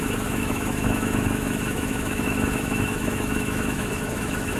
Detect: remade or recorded remade